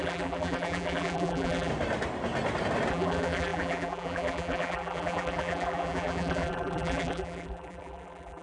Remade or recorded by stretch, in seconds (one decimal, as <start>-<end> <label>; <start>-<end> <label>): 0.0-1.7 remade; 1.7-2.9 recorded; 2.9-8.4 remade